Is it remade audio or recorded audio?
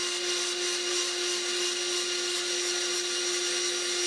recorded